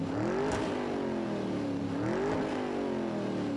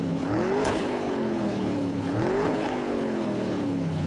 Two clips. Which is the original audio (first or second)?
first